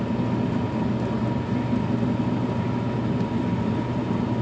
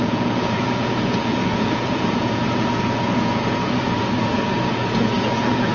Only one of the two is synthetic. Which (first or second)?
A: second